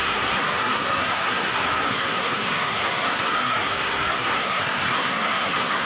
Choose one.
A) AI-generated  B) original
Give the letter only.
A